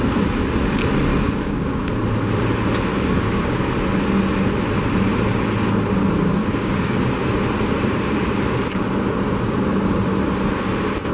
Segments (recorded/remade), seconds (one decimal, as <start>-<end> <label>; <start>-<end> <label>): 0.0-1.1 recorded; 1.1-1.9 remade; 1.9-2.9 recorded; 2.9-3.7 remade; 3.7-6.4 recorded; 6.4-7.0 remade; 7.0-11.1 recorded